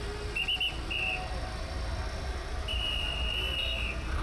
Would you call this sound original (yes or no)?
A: yes